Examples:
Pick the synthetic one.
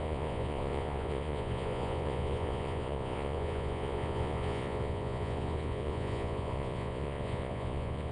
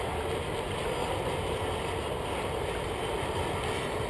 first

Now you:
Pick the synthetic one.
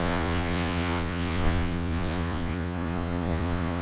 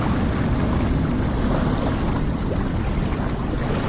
first